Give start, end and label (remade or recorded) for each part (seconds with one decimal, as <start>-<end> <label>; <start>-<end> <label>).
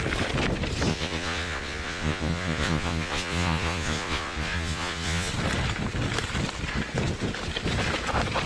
0.0-0.9 recorded; 0.9-5.3 remade; 5.3-8.5 recorded